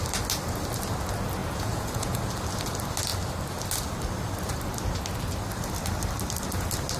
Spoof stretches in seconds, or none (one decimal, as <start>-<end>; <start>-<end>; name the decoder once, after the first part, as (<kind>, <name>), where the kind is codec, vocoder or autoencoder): 1.4-2.2 (vocoder, Vocos)